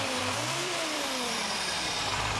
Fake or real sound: fake